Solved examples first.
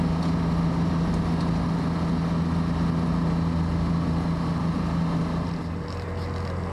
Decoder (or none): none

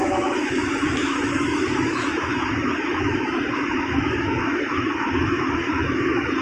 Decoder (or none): autoencoder, DAC-VAE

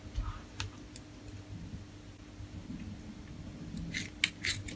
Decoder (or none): none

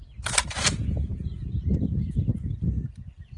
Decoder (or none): none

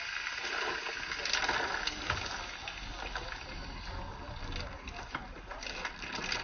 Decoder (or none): none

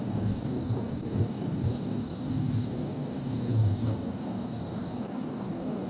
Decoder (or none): codec, DAC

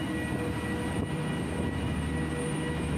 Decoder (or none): none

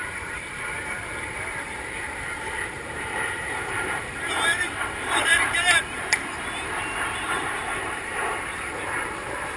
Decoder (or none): vocoder, BigVGAN v2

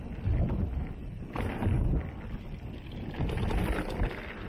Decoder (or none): none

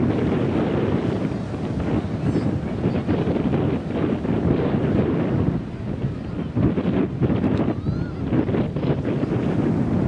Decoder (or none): none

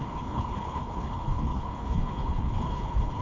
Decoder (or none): codec, HILCodec